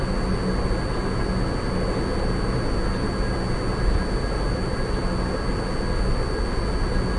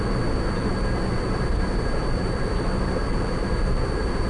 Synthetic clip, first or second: second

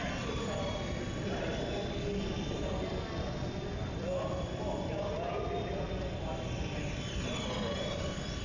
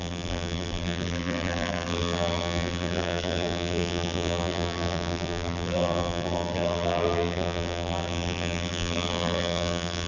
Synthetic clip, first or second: second